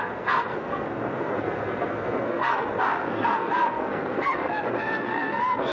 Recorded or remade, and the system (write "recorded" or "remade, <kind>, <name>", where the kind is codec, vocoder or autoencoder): remade, codec, SNAC